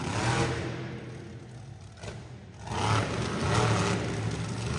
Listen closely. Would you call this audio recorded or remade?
recorded